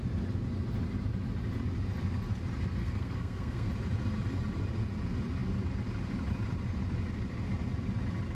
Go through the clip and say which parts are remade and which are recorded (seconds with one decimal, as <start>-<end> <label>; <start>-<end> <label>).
0.0-2.8 recorded; 2.8-3.7 remade; 3.7-8.3 recorded